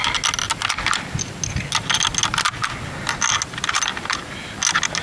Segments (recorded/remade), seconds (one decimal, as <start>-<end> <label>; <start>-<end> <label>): 0.0-5.0 recorded